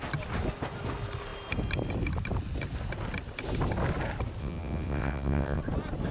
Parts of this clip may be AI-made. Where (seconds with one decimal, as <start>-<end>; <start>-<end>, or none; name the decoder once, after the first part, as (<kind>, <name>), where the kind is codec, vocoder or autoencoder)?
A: 4.4-5.6 (vocoder, WaveNeXt)